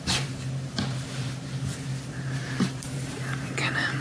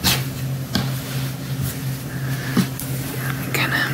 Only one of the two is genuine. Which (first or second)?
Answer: second